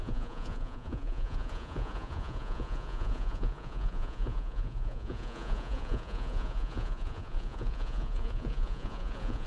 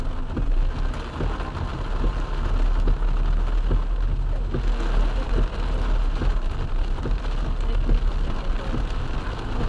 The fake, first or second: first